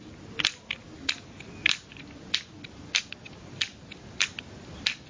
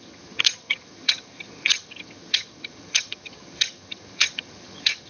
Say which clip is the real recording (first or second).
first